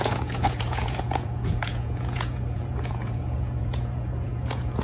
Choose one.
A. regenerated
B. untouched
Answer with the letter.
A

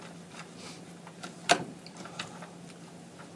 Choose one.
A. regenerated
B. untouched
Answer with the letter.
B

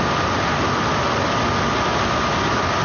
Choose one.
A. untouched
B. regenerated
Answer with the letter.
A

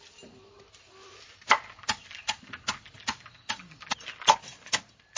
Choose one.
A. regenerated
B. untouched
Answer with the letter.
B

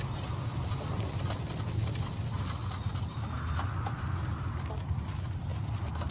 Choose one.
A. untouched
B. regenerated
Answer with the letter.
A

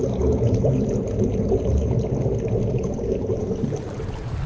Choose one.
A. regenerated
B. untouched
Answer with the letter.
B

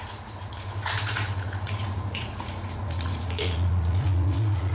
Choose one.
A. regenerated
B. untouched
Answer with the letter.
A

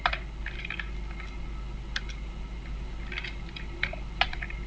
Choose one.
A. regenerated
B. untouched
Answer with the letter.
B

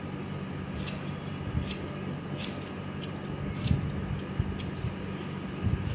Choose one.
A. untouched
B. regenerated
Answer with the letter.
A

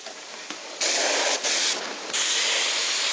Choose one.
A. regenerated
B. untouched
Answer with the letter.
B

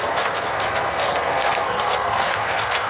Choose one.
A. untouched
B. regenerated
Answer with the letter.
B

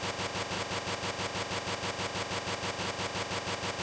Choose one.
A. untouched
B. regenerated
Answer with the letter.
A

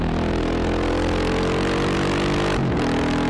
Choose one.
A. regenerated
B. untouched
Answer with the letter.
B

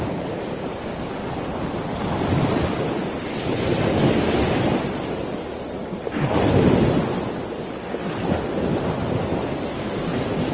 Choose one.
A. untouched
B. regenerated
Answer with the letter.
A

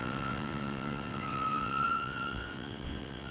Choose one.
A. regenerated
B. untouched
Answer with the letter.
A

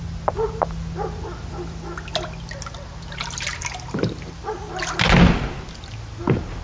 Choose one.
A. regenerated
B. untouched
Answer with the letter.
B